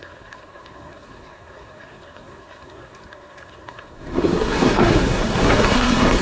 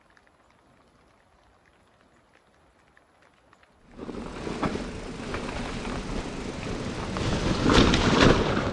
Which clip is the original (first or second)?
second